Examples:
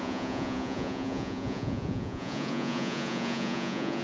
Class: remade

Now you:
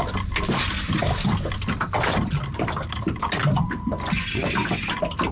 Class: recorded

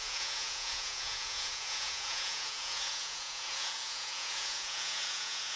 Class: remade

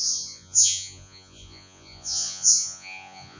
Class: remade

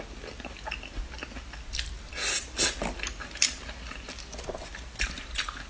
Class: recorded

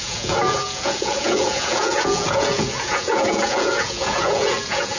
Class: remade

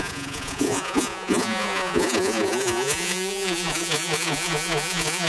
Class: remade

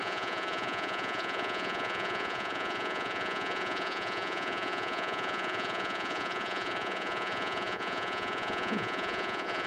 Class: remade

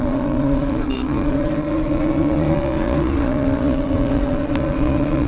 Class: remade